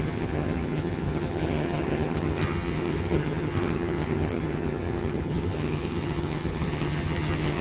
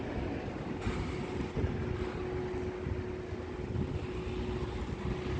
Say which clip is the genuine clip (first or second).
second